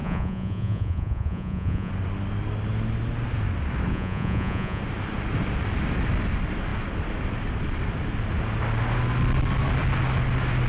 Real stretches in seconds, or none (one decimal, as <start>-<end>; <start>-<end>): 1.9-3.9; 4.8-10.7